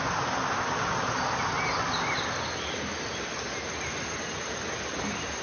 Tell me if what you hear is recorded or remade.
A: recorded